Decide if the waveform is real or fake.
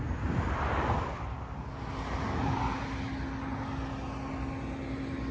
real